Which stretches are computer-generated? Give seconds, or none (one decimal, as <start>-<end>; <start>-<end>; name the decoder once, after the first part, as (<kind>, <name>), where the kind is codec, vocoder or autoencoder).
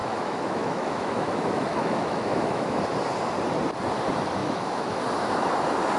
0.0-2.8 (autoencoder, DAC-VAE); 4.4-5.0